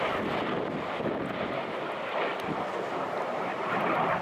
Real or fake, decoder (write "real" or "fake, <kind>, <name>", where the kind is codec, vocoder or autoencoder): real